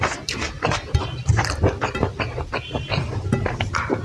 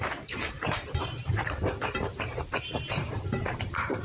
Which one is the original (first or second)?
first